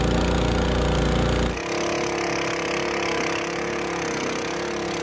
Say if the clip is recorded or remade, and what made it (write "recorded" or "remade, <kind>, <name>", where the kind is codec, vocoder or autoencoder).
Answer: recorded